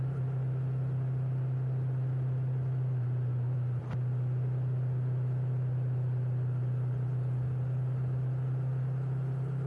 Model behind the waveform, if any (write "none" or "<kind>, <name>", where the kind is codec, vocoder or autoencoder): none